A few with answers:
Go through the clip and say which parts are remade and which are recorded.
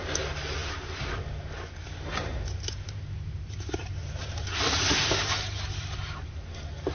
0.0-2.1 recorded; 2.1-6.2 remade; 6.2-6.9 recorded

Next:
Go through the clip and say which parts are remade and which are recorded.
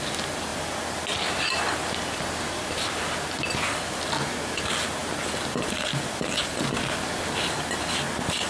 0.0-8.5 recorded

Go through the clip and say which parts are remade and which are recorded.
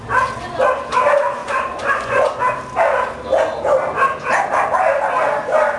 0.0-1.4 recorded; 1.4-2.4 remade; 2.4-5.8 recorded